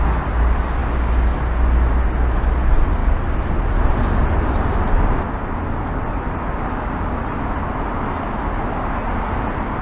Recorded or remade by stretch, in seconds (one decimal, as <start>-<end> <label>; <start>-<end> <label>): 0.0-9.8 recorded